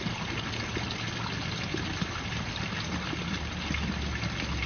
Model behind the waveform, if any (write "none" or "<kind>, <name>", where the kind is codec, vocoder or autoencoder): none